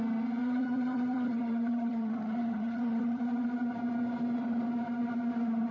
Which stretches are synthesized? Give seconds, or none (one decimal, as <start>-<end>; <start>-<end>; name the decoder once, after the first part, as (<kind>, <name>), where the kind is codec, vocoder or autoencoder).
0.4-3.2 (vocoder, HiFi-GAN)